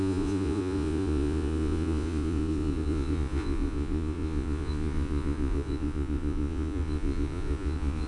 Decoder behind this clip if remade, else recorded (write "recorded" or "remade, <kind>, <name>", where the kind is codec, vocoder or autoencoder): remade, vocoder, Vocos